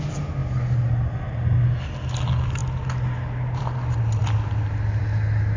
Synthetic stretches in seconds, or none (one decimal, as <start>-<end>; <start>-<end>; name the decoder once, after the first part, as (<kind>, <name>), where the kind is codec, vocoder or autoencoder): none